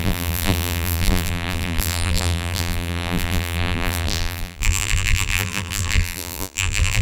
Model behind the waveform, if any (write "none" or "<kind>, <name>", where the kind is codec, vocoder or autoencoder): vocoder, BigVGAN v2